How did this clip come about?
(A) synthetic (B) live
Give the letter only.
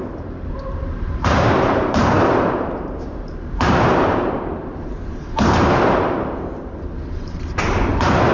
A